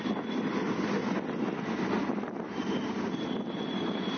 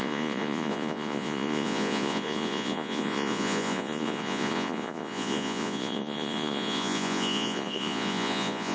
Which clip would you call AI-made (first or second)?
second